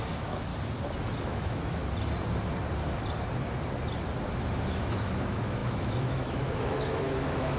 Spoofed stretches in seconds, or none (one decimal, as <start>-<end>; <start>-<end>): 0.0-0.5; 1.2-1.8; 4.6-7.6